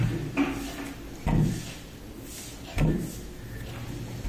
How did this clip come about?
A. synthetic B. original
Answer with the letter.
B